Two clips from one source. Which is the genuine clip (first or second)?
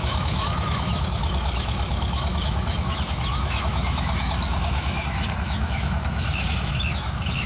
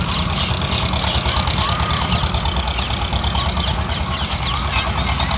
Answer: second